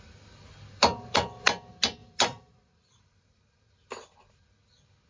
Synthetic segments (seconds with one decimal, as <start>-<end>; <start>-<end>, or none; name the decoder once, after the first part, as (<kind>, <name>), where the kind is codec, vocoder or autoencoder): 2.0-4.3 (vocoder, BigVGAN v2)